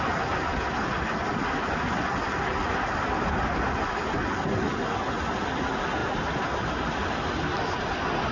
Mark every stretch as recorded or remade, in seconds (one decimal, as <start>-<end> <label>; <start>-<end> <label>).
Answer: 0.0-8.3 recorded